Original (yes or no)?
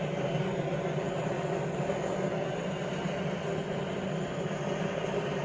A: yes